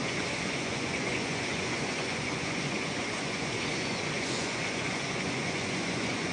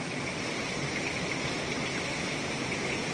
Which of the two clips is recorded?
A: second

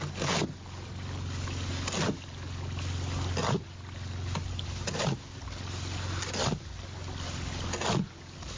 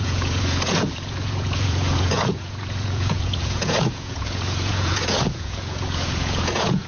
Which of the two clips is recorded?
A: first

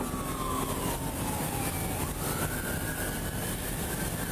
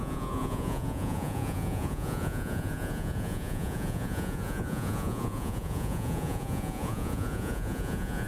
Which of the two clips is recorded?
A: first